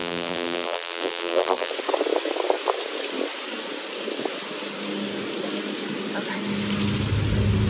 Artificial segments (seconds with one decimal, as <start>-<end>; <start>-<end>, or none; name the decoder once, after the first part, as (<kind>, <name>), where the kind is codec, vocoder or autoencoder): 0.0-1.7 (vocoder, BigVGAN v2)